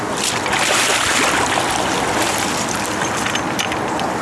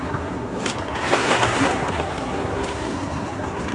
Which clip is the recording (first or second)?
first